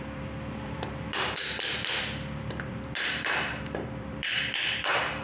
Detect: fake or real fake